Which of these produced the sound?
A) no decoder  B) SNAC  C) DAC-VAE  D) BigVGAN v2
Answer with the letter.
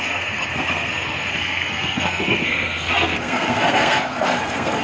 B